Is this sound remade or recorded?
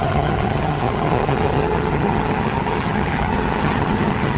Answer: remade